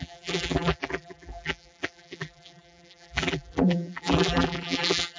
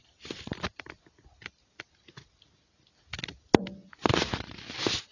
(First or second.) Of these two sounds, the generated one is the first